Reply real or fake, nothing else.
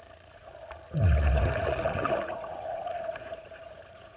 fake